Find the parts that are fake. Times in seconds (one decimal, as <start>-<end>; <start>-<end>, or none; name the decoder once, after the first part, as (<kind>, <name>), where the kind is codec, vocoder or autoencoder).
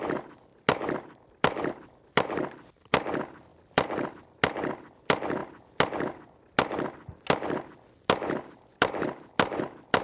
3.5-4.1 (vocoder, BigVGAN v2)